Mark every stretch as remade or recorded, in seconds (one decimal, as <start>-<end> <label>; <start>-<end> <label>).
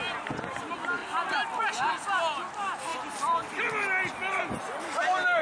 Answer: 0.0-5.4 recorded